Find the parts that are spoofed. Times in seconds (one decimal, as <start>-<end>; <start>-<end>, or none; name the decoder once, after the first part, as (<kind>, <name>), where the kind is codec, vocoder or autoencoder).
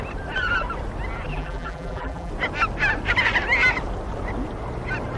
1.3-2.3 (vocoder, BigVGAN v2)